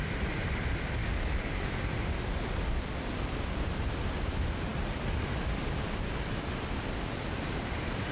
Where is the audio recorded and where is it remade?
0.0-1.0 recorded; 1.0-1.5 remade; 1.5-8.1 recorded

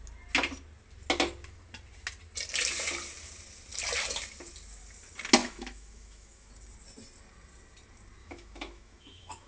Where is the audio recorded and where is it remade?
0.0-5.4 recorded; 5.4-6.5 remade; 6.5-8.2 recorded; 8.2-9.5 remade

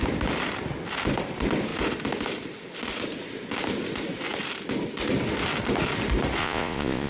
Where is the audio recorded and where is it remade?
0.0-6.4 recorded; 6.4-7.1 remade

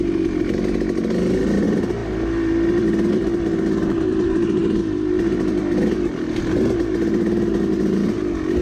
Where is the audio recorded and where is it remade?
0.0-8.6 recorded

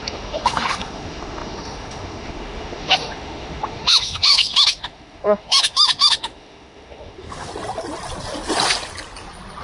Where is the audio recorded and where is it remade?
0.0-7.5 remade; 7.5-9.6 recorded

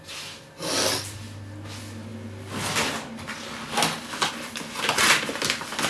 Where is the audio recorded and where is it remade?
0.0-5.9 recorded

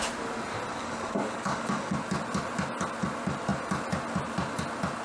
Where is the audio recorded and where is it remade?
0.0-0.8 recorded; 0.8-1.9 remade; 1.9-5.0 recorded

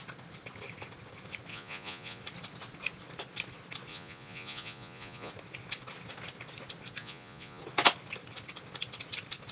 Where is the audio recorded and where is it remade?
0.0-1.5 recorded; 1.5-2.2 remade; 2.2-3.9 recorded; 3.9-5.3 remade; 5.3-7.0 recorded; 7.0-7.6 remade; 7.6-9.5 recorded